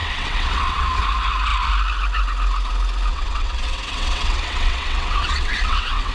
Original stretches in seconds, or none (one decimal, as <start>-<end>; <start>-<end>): 1.0-3.1